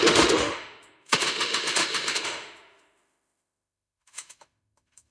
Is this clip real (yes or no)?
no